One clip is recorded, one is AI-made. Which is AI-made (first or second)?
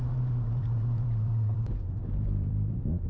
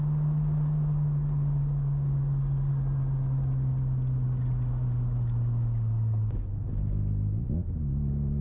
first